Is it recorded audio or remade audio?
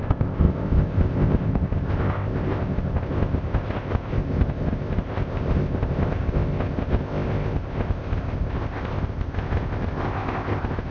remade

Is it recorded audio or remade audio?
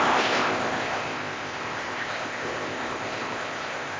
remade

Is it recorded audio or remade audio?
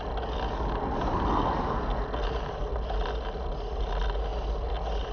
recorded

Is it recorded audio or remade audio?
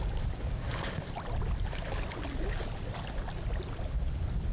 recorded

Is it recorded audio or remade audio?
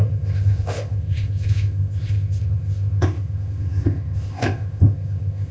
remade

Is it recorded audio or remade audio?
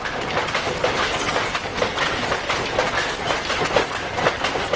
recorded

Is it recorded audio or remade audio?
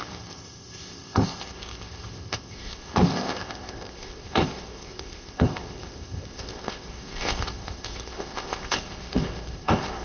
remade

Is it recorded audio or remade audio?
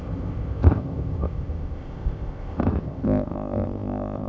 remade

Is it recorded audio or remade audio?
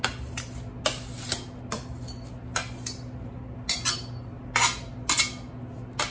recorded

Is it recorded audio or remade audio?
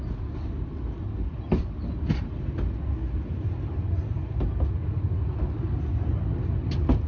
recorded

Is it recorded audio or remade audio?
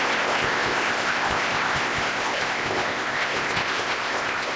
remade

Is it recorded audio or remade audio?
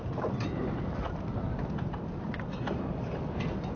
recorded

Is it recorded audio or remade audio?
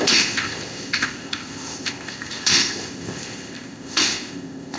remade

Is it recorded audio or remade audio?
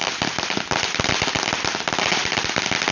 recorded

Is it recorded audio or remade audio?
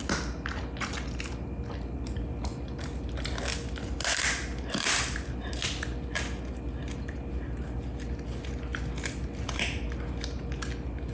recorded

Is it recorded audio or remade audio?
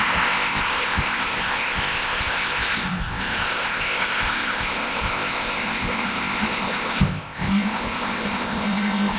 remade